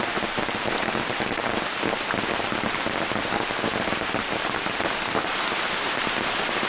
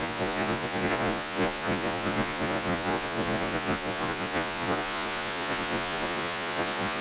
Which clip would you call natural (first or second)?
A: first